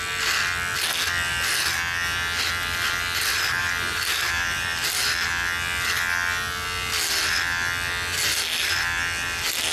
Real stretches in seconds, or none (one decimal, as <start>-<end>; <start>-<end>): 0.0-3.6; 5.0-9.7